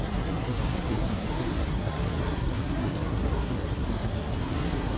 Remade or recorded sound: remade